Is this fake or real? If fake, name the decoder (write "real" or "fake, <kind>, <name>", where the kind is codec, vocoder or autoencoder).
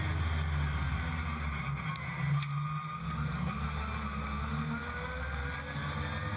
real